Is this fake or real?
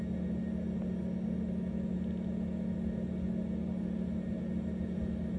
real